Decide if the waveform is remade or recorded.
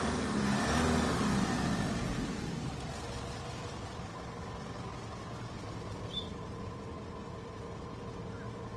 recorded